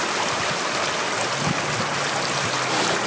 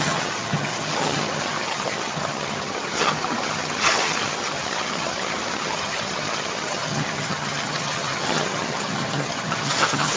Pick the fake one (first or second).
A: second